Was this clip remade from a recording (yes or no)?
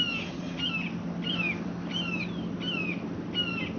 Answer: no